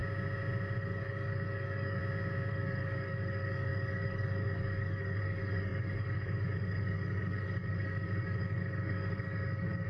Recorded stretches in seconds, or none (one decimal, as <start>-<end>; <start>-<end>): 0.0-0.8; 2.0-2.5